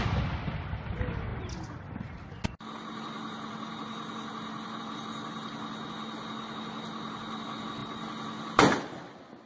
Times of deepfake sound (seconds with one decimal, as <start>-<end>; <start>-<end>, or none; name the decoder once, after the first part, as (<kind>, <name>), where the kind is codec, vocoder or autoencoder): none